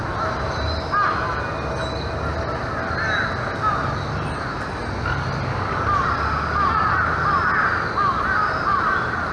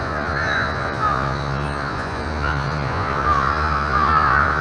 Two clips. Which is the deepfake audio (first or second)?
second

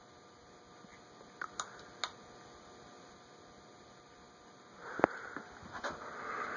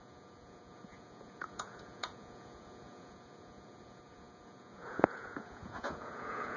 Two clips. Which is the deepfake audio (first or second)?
second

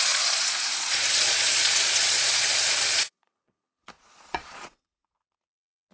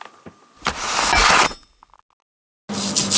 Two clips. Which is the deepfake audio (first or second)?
first